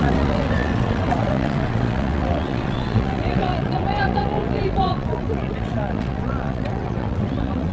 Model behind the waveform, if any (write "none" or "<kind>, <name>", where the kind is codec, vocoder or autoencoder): vocoder, WaveNeXt